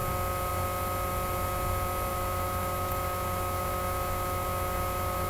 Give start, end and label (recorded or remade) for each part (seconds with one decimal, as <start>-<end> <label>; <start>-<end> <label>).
0.0-2.1 recorded; 2.1-5.3 remade